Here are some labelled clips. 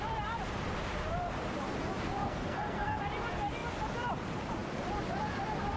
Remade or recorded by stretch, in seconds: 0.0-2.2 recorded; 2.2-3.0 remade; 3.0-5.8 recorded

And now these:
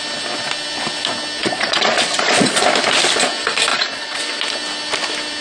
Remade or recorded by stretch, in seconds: 0.0-1.4 recorded; 1.4-2.6 remade; 2.6-3.7 recorded; 3.7-4.2 remade; 4.2-5.4 recorded

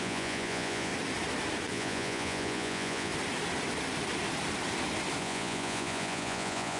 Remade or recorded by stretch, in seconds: 0.0-0.9 remade; 0.9-1.7 recorded; 1.7-3.1 remade; 3.1-5.2 recorded; 5.2-6.8 remade

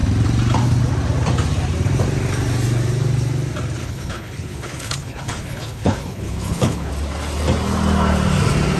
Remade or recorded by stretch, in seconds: 0.0-3.8 recorded; 3.8-6.9 remade; 6.9-8.8 recorded

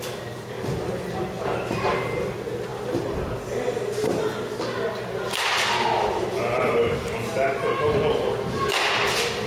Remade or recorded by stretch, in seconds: 0.0-9.5 recorded

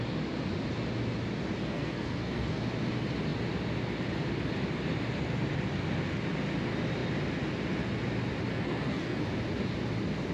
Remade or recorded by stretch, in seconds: 0.0-1.6 recorded; 1.6-2.7 remade; 2.7-8.5 recorded; 8.5-9.2 remade; 9.2-10.3 recorded